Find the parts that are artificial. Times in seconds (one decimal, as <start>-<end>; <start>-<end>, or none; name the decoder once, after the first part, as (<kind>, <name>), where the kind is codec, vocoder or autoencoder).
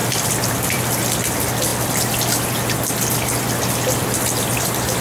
0.0-0.8 (vocoder, BigVGAN v2)